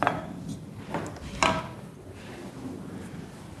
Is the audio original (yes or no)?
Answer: yes